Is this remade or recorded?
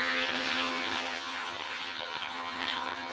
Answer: remade